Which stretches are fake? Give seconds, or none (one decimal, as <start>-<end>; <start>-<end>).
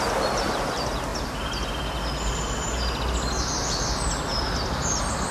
none